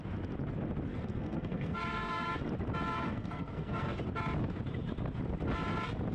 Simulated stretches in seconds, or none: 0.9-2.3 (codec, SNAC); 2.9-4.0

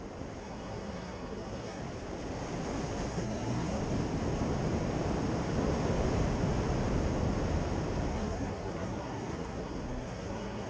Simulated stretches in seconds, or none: 0.4-1.8 (codec, SNAC); 3.1-3.8; 8.1-10.7

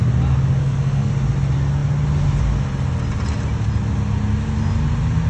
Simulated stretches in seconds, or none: 0.6-1.1 (codec, SNAC)